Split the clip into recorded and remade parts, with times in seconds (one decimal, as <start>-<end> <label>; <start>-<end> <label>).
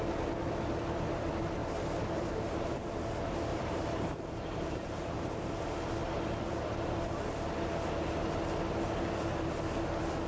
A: 0.0-1.6 recorded; 1.6-2.9 remade; 2.9-3.5 recorded; 3.5-5.5 remade; 5.5-10.3 recorded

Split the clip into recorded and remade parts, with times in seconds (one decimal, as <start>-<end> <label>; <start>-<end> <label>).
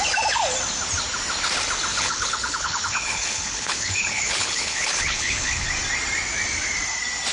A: 0.0-1.9 recorded; 1.9-5.7 remade; 5.7-7.3 recorded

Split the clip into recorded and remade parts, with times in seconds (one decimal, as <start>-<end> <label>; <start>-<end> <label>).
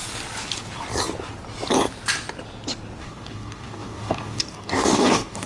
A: 0.0-3.0 recorded; 3.0-5.5 remade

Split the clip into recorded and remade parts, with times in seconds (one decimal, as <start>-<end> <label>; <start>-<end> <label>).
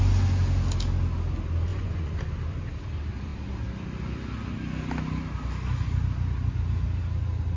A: 0.0-1.7 recorded; 1.7-2.2 remade; 2.2-7.6 recorded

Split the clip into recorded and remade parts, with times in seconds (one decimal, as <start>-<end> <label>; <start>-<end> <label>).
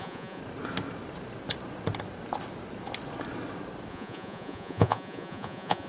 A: 0.0-0.4 remade; 0.4-3.9 recorded; 3.9-5.9 remade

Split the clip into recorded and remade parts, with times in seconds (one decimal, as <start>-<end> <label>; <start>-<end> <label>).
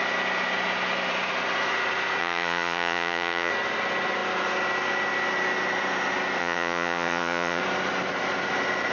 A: 0.0-2.2 recorded; 2.2-3.5 remade; 3.5-6.4 recorded; 6.4-7.6 remade; 7.6-8.9 recorded